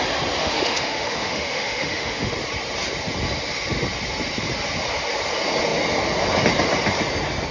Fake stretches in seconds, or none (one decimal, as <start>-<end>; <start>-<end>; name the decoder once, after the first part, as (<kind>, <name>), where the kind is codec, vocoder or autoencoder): 0.4-2.3 (autoencoder, DAC-VAE)